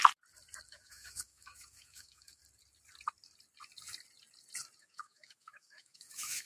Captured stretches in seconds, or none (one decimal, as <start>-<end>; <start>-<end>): 0.0-0.7; 2.4-4.8